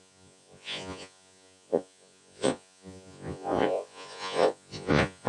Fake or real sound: fake